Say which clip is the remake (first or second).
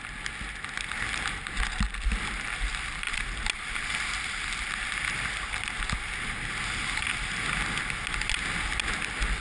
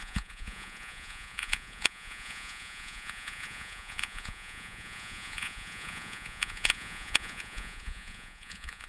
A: second